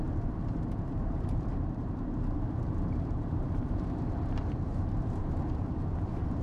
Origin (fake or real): fake